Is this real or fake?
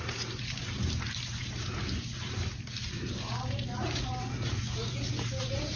fake